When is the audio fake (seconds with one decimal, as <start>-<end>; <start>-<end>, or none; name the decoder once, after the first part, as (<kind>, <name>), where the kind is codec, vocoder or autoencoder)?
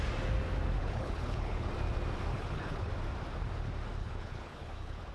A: 0.8-1.7 (codec, HILCodec); 2.3-2.9; 4.0-5.1